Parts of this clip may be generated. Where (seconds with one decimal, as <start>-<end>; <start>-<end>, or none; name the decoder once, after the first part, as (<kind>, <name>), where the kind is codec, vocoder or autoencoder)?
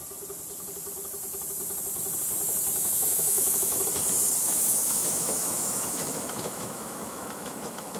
2.8-3.8 (autoencoder, DAC-VAE); 4.4-8.0